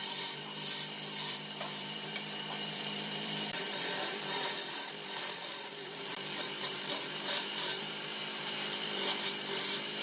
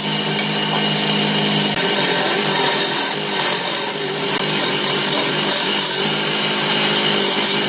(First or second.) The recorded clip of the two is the second